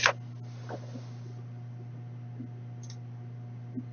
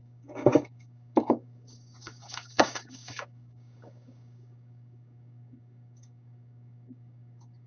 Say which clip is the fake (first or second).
second